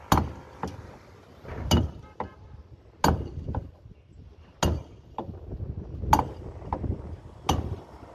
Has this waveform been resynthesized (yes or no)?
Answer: no